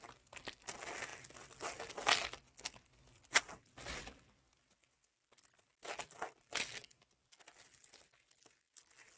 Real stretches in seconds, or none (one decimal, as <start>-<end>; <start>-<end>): 0.0-9.2